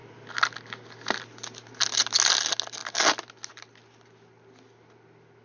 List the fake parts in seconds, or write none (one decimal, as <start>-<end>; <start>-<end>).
none